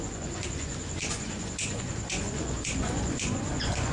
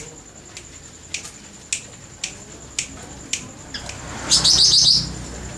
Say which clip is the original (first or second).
second